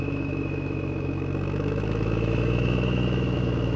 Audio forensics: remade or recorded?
remade